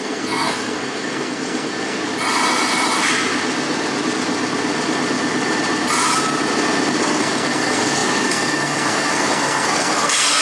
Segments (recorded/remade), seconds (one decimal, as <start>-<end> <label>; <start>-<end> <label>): 0.0-2.0 remade; 2.0-7.0 recorded; 7.0-10.4 remade